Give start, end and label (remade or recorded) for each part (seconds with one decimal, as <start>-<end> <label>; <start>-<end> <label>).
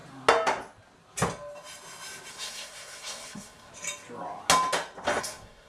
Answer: 0.0-2.3 recorded; 2.3-3.7 remade; 3.7-5.2 recorded; 5.2-5.7 remade